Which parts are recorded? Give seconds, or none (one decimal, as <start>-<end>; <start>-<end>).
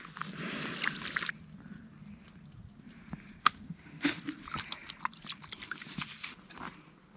0.0-3.4; 4.2-7.2